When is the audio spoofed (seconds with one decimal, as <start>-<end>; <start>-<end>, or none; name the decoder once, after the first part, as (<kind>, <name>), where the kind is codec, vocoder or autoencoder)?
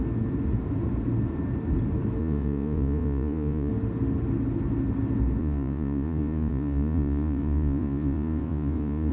2.2-3.7 (vocoder, Vocos); 5.4-9.1